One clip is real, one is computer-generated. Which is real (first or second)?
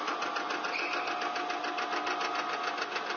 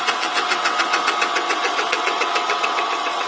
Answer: first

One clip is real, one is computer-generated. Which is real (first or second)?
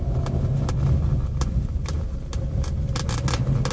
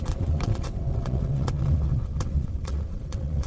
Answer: first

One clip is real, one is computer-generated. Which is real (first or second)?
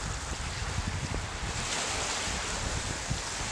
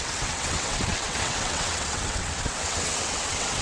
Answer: first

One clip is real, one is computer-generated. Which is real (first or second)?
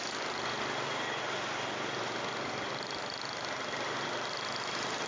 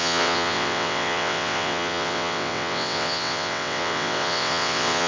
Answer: first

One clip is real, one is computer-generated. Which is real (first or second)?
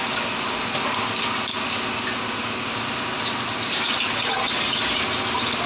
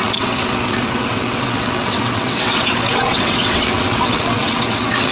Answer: first